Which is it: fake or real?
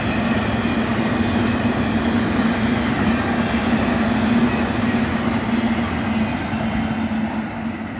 real